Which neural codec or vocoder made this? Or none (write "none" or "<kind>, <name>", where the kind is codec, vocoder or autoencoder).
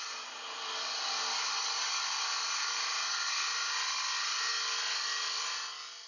none